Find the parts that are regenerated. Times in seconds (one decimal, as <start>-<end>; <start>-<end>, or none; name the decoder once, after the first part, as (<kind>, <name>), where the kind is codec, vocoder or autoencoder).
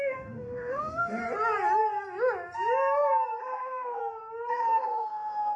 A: 0.0-1.2 (autoencoder, DAC-VAE); 3.4-4.0; 4.5-5.6